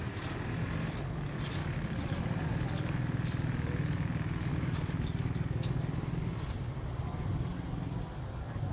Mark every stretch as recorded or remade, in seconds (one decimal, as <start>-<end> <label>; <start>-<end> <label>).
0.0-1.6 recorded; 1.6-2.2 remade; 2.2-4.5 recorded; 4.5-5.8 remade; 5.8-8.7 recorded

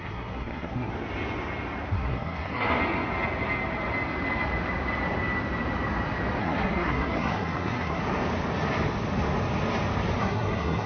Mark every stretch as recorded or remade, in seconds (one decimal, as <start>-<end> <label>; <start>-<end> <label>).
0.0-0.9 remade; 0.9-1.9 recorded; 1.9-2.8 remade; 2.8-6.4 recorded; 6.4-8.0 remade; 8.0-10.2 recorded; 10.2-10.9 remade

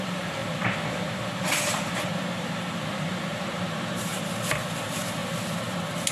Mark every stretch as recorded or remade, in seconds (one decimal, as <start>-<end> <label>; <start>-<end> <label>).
0.0-4.1 remade; 4.1-4.8 recorded; 4.8-5.2 remade; 5.2-6.1 recorded

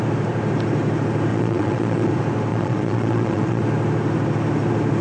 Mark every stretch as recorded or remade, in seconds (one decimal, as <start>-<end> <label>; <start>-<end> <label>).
0.0-1.3 recorded; 1.3-2.1 remade; 2.1-2.5 recorded; 2.5-3.6 remade; 3.6-5.0 recorded